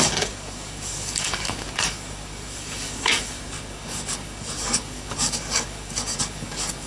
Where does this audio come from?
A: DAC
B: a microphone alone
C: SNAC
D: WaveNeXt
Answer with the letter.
A